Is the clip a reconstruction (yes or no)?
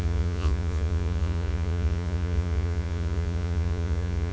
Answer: yes